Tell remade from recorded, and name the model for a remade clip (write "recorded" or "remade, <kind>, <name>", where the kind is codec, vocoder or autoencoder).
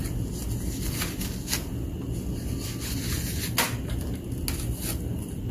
recorded